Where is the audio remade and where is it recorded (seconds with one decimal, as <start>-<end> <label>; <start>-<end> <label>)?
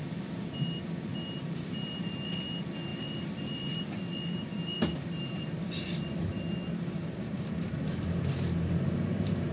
0.0-2.9 recorded; 2.9-7.4 remade; 7.4-9.5 recorded